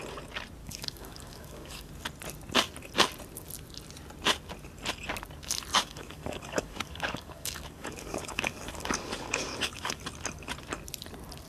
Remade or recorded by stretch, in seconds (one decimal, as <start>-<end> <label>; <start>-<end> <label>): 0.0-0.6 recorded; 0.6-1.9 remade; 1.9-5.7 recorded; 5.7-10.0 remade; 10.0-11.5 recorded